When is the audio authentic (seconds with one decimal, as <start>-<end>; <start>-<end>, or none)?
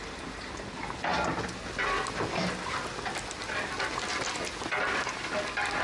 0.0-5.8